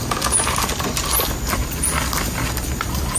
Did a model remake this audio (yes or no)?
no